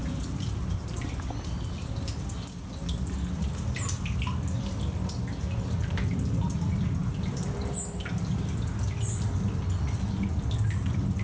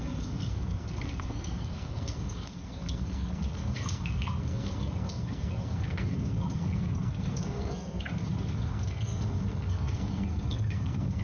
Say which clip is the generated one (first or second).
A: second